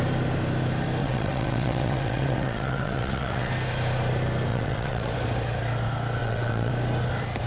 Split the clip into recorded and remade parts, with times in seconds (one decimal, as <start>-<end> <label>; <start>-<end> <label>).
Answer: 0.0-1.0 recorded; 1.0-3.5 remade; 3.5-4.5 recorded; 4.5-5.1 remade; 5.1-6.2 recorded; 6.2-6.7 remade; 6.7-7.5 recorded